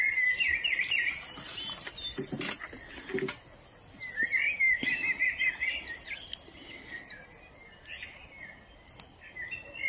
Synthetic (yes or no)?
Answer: no